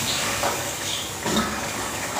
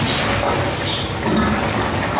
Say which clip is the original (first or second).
second